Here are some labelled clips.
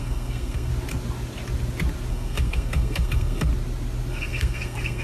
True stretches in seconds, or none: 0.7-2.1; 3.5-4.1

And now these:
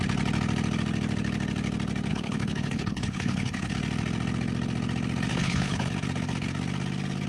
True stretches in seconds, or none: 0.0-2.1; 3.7-5.3; 5.9-7.3

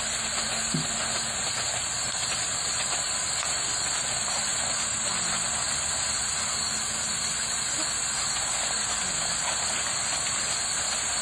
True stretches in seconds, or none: 0.0-11.2

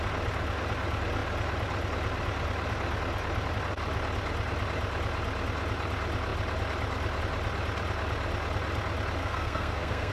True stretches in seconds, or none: 0.0-9.2

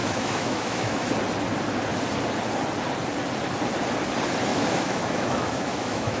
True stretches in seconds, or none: 1.1-4.5